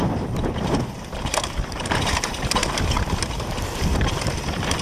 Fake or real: fake